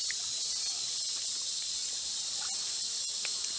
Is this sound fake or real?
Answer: real